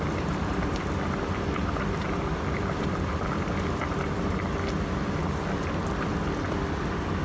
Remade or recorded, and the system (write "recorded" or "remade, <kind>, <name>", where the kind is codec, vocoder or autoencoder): recorded